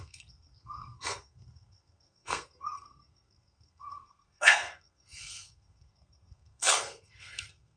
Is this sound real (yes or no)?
no